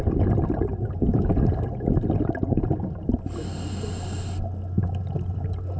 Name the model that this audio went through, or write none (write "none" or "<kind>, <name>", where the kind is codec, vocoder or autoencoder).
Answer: none